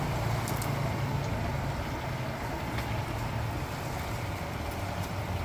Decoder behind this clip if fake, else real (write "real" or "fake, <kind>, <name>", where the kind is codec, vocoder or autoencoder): real